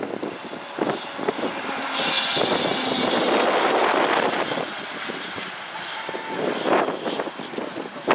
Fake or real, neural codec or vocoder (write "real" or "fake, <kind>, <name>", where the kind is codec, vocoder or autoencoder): real